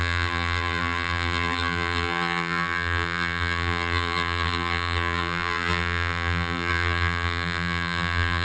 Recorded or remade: remade